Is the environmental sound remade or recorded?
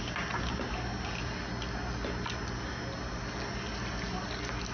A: recorded